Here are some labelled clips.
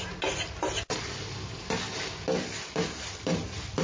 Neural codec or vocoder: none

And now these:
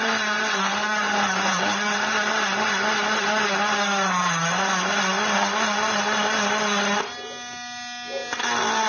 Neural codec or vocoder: none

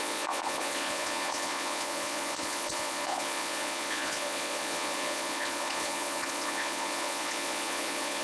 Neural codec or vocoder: vocoder, Vocos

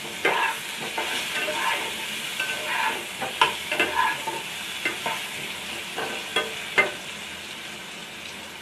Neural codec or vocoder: none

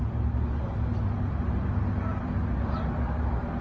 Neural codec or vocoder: none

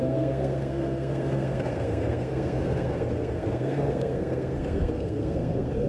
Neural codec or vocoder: codec, SNAC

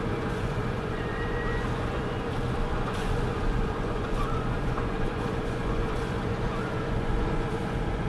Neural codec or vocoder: vocoder, Vocos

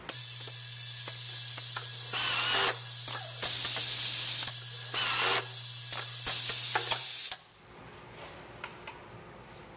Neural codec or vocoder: none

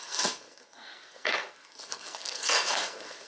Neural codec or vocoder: codec, SNAC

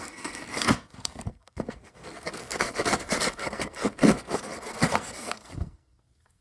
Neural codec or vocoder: codec, SNAC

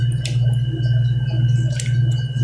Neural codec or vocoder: none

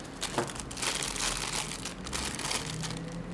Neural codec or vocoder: none